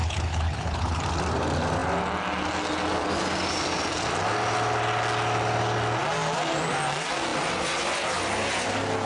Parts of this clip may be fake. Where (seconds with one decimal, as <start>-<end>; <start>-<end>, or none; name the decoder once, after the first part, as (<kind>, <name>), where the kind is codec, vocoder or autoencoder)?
0.0-1.0 (codec, HILCodec)